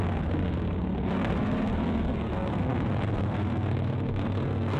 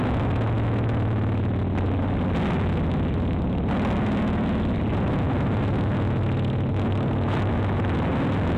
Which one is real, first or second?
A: second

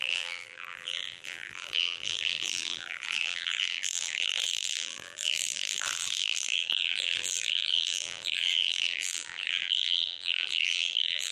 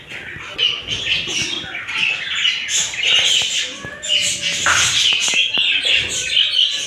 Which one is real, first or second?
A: second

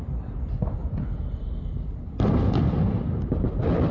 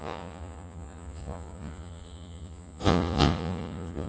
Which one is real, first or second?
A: first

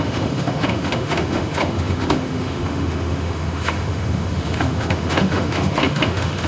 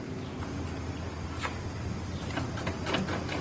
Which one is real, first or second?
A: second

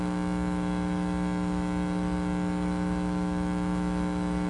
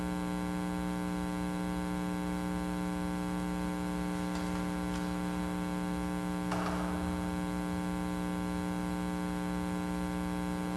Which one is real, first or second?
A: second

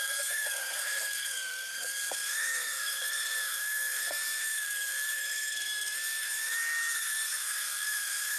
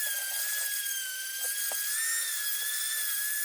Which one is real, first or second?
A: second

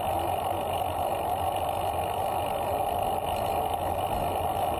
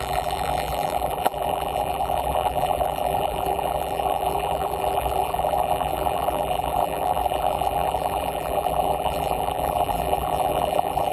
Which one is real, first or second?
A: first